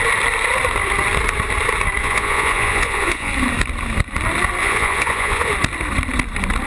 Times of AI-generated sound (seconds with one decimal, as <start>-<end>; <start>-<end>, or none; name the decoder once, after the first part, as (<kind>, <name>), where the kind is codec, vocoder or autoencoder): 2.0-3.3 (vocoder, Vocos); 4.6-5.5